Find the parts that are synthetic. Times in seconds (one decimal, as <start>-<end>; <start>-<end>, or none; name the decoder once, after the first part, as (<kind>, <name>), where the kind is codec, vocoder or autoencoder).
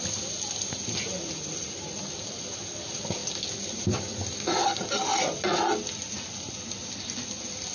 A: none